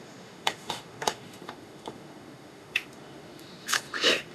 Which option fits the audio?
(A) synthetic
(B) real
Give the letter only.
A